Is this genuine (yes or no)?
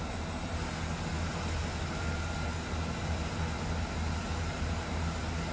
yes